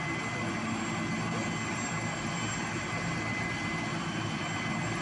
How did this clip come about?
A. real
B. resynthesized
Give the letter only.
A